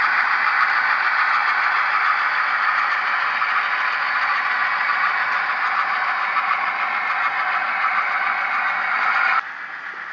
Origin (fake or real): real